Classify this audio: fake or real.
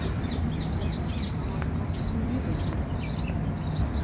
real